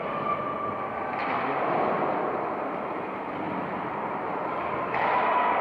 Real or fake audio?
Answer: real